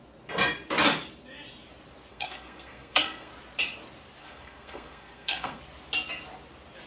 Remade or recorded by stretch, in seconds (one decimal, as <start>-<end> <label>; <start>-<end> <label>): 0.0-2.1 recorded; 2.1-3.3 remade; 3.3-4.2 recorded; 4.2-5.6 remade; 5.6-6.9 recorded